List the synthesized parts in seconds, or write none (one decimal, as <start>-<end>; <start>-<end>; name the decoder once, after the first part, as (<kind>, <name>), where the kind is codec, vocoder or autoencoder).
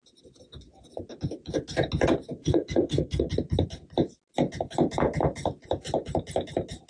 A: 2.4-3.3 (codec, SNAC)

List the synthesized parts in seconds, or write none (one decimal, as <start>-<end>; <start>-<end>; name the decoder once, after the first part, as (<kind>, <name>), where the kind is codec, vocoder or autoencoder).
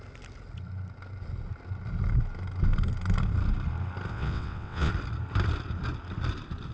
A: 4.1-4.9 (vocoder, WaveNeXt)